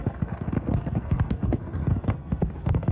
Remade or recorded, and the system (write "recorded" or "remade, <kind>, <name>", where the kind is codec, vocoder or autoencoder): remade, codec, SNAC